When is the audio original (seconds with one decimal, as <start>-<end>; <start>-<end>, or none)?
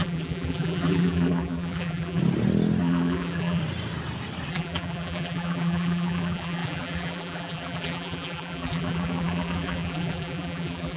2.2-2.8; 3.6-4.5